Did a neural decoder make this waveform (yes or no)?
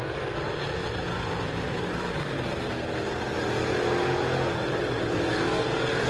no